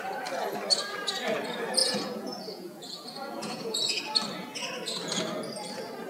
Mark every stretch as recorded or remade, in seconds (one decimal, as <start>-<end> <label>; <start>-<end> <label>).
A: 0.0-1.8 recorded; 1.8-4.0 remade; 4.0-6.1 recorded